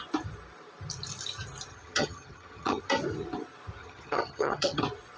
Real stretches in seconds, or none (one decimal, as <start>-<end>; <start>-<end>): 0.0-1.7; 2.8-3.8; 4.8-5.2